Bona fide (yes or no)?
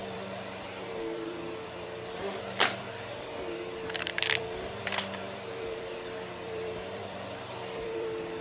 no